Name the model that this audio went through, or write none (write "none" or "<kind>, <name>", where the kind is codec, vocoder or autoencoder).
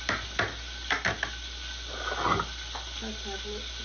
none